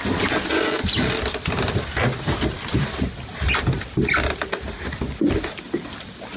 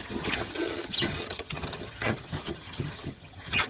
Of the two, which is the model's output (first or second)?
second